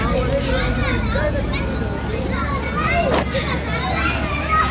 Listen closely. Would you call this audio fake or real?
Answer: real